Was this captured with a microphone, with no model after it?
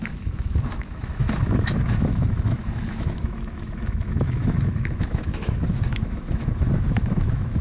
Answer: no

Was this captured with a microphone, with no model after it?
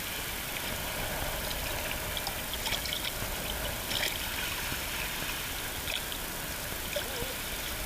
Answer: yes